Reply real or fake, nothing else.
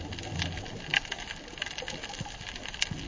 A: real